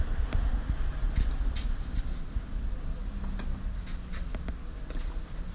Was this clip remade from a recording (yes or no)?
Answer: no